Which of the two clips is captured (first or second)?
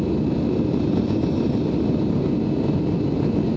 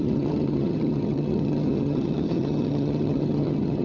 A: first